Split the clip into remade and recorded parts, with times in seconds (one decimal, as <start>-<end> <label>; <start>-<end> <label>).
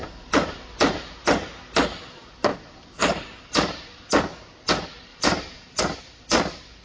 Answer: 0.0-5.1 recorded; 5.1-5.8 remade; 5.8-6.8 recorded